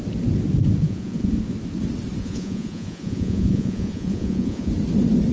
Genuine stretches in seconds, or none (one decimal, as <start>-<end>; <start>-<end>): 0.0-0.8; 1.3-2.2; 4.7-5.3

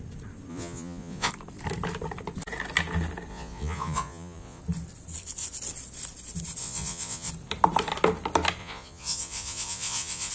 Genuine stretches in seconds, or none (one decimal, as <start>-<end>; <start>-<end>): 0.0-0.5; 1.3-3.3; 4.6-6.6; 7.3-8.6

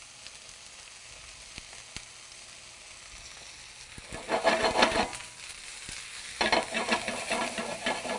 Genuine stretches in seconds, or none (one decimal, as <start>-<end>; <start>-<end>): 0.0-8.2

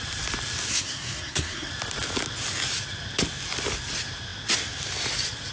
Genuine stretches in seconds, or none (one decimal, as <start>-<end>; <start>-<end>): 0.0-0.7; 1.7-5.5